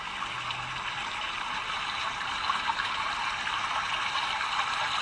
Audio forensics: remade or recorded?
recorded